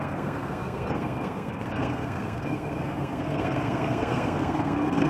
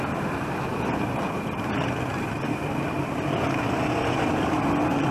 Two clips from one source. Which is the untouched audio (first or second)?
second